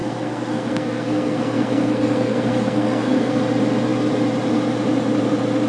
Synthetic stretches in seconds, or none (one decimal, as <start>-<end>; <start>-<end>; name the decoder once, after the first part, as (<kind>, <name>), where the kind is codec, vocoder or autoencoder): 0.0-3.4 (codec, SNAC)